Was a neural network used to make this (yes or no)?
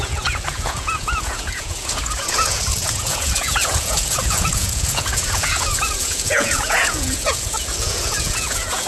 yes